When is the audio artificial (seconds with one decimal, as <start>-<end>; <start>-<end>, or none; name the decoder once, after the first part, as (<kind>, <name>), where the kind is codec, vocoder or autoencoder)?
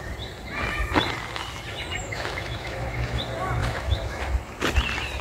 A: 2.0-3.2 (autoencoder, DAC-VAE); 3.6-4.2